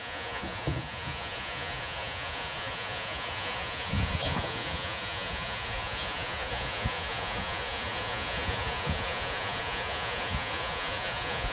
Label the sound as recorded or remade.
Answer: remade